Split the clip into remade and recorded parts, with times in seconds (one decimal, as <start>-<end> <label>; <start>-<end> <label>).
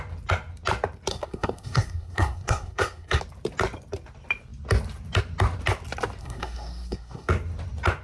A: 0.0-1.1 recorded; 1.1-3.2 remade; 3.2-6.2 recorded; 6.2-7.3 remade; 7.3-8.0 recorded